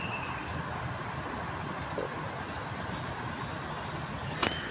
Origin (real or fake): real